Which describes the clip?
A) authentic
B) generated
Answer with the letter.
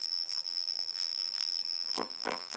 B